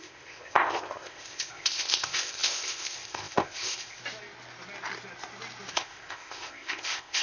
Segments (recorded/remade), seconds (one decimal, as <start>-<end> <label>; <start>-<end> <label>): 0.0-4.0 remade; 4.0-5.7 recorded; 5.7-7.2 remade